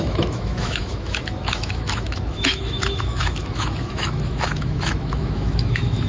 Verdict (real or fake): fake